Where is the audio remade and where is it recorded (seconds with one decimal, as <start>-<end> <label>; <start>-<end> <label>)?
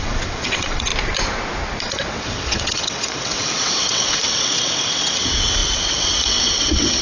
0.0-0.9 remade; 0.9-1.8 recorded; 1.8-7.0 remade